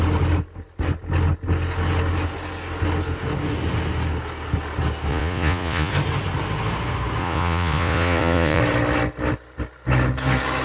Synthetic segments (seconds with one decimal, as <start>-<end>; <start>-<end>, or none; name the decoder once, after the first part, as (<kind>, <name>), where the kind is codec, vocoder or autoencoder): 5.1-5.9 (vocoder, Vocos); 7.2-8.6